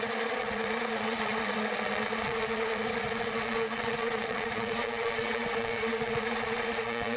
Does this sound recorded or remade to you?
remade